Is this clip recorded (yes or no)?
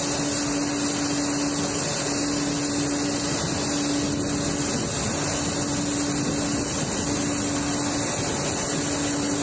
yes